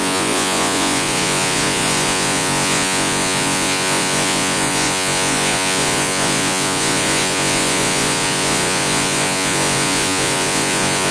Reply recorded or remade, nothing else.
remade